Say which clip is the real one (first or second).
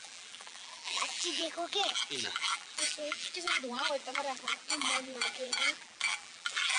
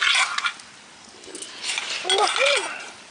second